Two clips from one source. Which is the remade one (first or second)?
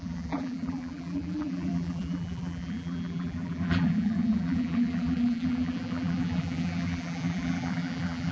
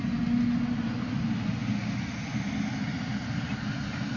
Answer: first